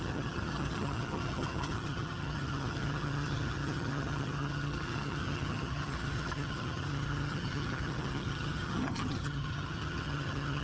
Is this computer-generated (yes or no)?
yes